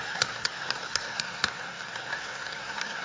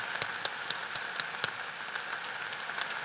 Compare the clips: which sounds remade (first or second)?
first